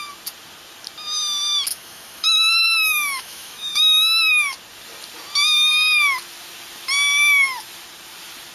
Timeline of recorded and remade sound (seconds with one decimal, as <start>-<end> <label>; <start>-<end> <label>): 0.0-1.7 recorded; 1.7-3.8 remade; 3.8-8.5 recorded